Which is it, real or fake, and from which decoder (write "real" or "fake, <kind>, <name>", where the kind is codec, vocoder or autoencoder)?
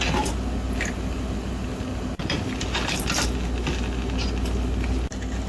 real